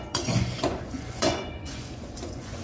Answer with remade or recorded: remade